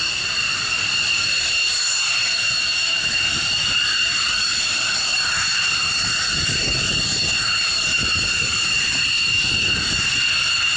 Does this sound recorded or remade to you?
recorded